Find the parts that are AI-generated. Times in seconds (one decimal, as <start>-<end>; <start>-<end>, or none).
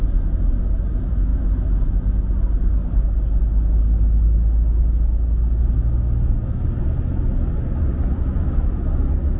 none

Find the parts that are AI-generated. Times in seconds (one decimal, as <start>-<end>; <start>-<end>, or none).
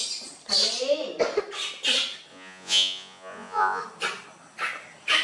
2.3-3.8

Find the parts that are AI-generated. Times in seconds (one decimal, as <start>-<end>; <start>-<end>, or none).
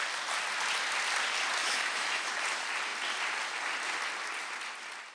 1.6-2.3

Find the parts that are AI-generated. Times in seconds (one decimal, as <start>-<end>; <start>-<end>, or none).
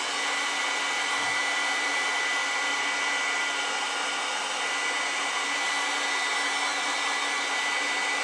none